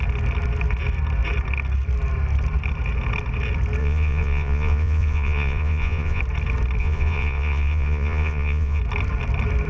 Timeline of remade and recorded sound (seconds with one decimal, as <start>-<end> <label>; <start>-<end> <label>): 0.0-3.8 recorded; 3.8-6.2 remade; 6.2-6.8 recorded; 6.8-8.8 remade; 8.8-9.7 recorded